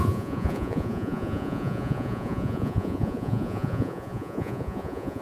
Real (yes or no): no